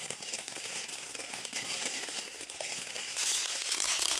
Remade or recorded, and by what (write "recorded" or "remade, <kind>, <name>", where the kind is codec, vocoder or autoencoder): remade, codec, SNAC